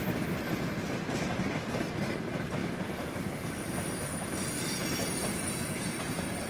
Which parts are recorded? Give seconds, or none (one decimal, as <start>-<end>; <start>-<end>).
0.0-2.6; 5.8-6.5